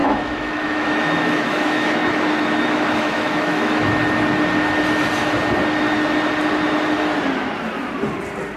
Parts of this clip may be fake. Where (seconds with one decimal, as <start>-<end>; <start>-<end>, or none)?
0.0-3.9